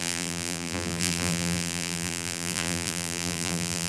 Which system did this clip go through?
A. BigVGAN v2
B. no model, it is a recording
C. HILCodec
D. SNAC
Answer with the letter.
A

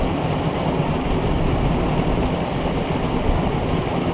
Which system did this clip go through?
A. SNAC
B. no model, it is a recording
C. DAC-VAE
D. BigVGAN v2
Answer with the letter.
B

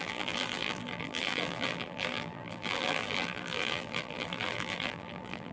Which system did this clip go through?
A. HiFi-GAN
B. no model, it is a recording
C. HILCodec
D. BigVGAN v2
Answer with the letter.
D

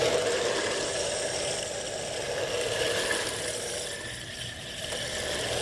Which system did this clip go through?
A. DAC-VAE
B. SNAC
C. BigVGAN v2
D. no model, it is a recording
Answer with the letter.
D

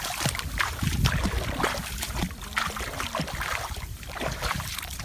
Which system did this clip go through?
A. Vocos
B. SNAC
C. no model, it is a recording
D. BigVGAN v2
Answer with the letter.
C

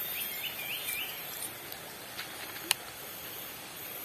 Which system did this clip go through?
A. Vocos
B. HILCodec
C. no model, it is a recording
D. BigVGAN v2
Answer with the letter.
C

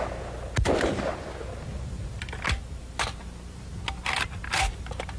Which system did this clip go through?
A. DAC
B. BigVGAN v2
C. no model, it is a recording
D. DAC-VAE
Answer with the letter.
C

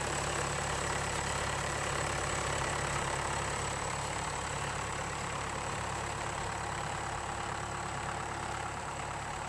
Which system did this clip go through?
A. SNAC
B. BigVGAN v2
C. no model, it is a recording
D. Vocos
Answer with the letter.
B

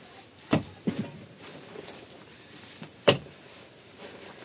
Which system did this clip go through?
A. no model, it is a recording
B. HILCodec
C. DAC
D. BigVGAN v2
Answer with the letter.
D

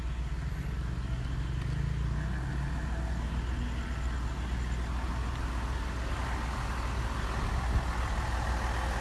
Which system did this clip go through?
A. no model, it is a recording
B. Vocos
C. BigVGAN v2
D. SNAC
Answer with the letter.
A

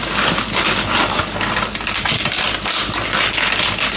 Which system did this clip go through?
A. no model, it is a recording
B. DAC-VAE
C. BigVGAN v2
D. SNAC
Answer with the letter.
A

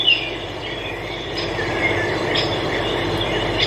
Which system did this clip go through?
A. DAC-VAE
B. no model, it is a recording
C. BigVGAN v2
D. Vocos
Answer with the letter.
C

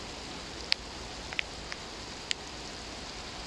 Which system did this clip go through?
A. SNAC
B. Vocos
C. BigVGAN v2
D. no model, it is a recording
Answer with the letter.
D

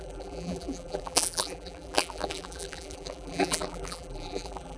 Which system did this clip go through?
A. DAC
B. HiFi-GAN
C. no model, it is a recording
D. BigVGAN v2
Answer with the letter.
D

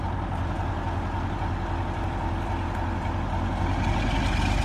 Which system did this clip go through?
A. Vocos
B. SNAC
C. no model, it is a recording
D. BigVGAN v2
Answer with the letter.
C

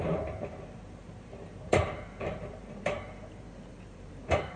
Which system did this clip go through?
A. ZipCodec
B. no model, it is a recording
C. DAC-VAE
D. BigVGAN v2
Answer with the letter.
D